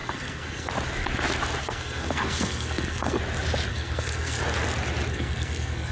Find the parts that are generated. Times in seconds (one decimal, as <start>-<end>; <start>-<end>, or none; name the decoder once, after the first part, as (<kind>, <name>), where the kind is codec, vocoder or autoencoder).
0.0-0.7 (codec, SNAC); 1.6-3.2; 3.7-4.4; 5.1-5.9